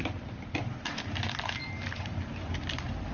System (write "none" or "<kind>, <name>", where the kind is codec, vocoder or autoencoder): none